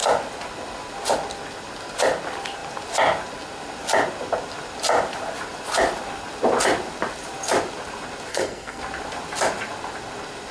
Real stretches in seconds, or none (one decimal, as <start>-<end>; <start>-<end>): 0.0-8.3; 8.8-10.5